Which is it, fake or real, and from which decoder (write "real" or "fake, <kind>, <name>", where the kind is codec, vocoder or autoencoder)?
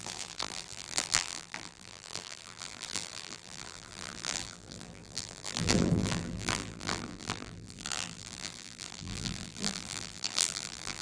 fake, vocoder, BigVGAN v2